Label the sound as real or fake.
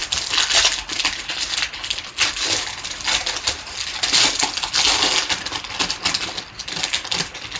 real